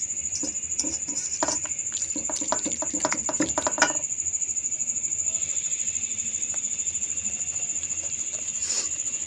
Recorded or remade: remade